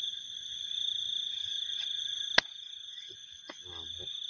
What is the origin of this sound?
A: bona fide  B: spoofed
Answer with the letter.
A